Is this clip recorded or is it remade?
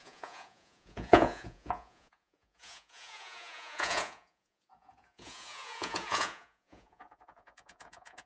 remade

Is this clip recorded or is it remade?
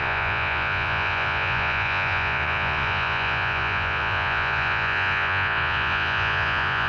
remade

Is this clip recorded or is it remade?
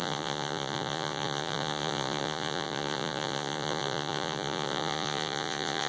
remade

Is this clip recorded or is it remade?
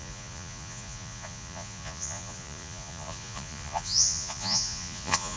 remade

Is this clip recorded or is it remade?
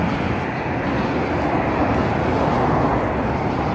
recorded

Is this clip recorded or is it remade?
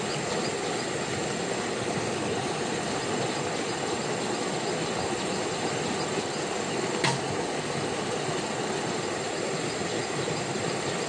recorded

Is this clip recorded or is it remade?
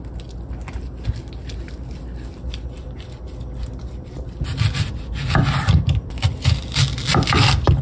recorded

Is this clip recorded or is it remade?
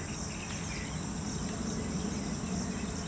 recorded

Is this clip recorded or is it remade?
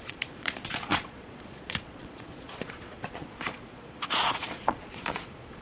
remade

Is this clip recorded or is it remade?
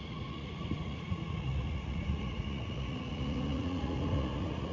remade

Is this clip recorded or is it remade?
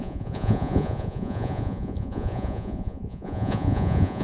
remade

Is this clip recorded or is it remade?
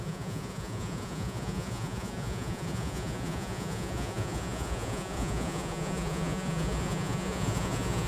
remade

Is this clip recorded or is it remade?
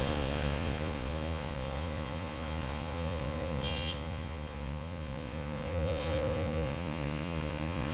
remade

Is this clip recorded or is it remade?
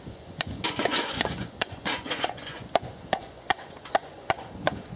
remade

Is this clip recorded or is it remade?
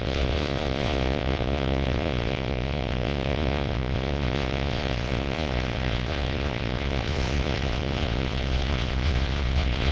remade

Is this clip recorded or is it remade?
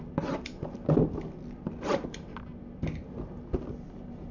recorded